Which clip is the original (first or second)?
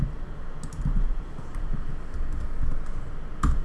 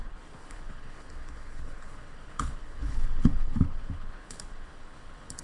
first